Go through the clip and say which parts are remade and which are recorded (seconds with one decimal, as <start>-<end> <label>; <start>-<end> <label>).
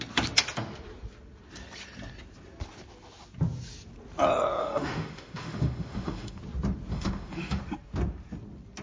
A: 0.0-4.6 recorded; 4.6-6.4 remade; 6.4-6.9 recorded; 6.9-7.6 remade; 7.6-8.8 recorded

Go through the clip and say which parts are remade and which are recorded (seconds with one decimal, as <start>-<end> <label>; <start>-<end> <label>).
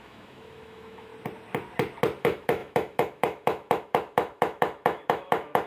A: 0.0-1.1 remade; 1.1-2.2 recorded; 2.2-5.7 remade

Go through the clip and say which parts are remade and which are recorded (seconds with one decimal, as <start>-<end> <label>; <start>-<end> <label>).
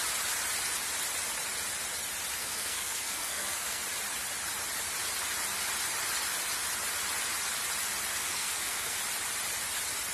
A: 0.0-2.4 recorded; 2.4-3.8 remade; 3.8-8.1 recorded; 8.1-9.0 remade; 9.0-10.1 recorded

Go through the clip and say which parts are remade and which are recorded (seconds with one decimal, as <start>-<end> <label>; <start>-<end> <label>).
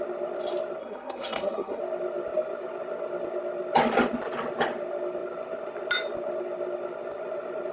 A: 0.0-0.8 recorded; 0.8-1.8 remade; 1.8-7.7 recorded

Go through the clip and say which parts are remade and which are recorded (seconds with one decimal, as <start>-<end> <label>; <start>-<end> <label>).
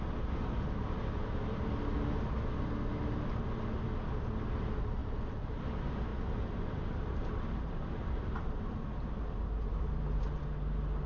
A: 0.0-5.0 recorded; 5.0-5.6 remade; 5.6-6.1 recorded; 6.1-10.0 remade; 10.0-11.1 recorded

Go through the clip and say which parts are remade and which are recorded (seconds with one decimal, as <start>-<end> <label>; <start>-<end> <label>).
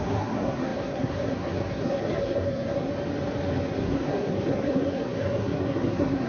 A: 0.0-2.9 remade; 2.9-3.7 recorded; 3.7-6.3 remade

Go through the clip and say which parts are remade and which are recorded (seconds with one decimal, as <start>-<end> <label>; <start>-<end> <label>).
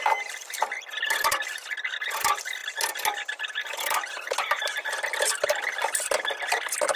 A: 0.0-7.0 recorded